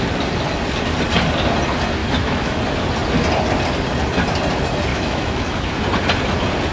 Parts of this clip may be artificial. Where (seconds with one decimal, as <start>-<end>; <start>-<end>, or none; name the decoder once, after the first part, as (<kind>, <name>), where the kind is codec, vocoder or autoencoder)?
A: 2.0-2.6 (autoencoder, DAC-VAE); 4.9-5.7